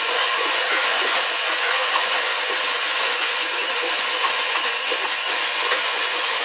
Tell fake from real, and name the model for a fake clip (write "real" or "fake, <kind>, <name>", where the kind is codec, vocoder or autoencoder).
fake, vocoder, Vocos